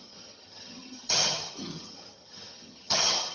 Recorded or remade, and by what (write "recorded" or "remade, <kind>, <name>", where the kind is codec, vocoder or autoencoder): remade, vocoder, HiFi-GAN